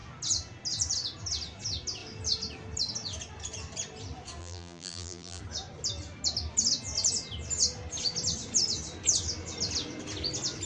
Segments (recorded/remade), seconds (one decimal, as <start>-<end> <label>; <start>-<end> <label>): 0.0-4.4 recorded; 4.4-5.4 remade; 5.4-10.7 recorded